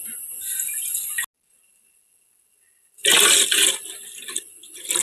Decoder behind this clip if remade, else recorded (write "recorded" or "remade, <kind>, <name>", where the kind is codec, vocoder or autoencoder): recorded